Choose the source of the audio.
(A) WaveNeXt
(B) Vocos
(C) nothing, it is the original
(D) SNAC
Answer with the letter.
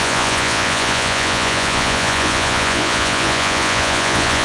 B